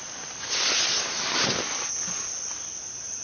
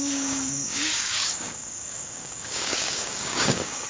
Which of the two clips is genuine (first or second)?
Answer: first